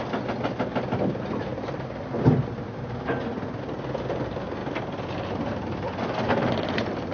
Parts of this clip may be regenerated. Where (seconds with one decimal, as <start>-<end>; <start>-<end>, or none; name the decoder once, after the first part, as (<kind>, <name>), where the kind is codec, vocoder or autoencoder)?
none